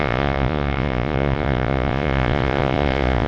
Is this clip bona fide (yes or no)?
no